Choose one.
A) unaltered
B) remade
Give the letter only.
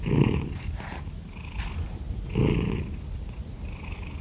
A